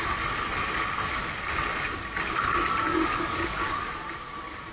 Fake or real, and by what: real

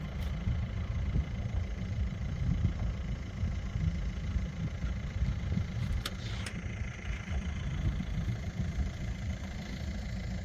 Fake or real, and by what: fake, vocoder, BigVGAN v2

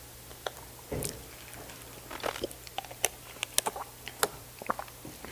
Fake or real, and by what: real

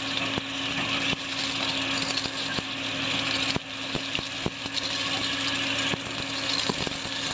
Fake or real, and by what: real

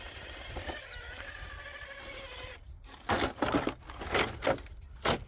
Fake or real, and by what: real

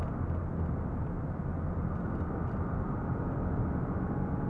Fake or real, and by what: real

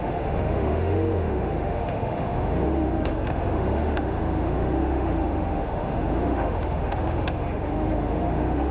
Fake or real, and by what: fake, autoencoder, DAC-VAE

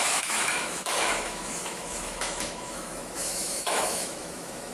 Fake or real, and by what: fake, autoencoder, DAC-VAE